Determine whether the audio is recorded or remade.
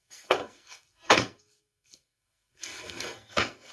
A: remade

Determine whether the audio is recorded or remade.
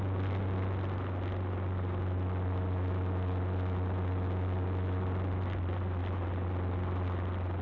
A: recorded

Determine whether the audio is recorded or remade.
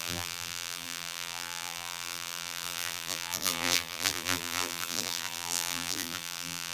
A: remade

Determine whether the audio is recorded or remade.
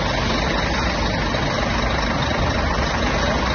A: recorded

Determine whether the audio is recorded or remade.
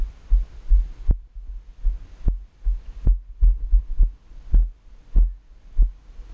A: recorded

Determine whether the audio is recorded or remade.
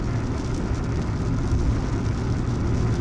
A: recorded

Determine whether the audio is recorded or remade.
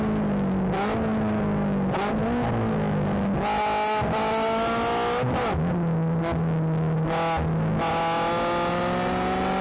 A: recorded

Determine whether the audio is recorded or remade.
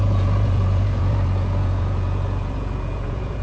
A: remade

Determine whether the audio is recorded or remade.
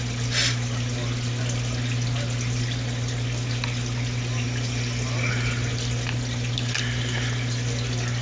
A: recorded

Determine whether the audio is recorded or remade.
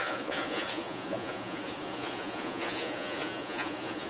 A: remade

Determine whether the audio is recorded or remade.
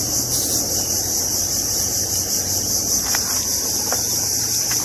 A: recorded